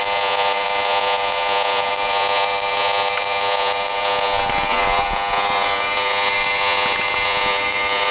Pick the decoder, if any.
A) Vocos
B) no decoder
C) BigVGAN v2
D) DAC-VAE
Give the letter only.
A